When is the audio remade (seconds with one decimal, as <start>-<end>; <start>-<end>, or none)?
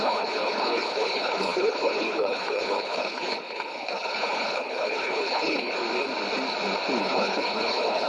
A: 0.0-5.8; 7.0-8.1